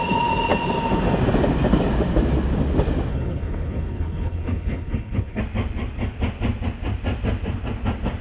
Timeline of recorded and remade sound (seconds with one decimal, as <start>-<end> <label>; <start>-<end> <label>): 0.0-3.1 recorded; 3.1-5.4 remade; 5.4-8.2 recorded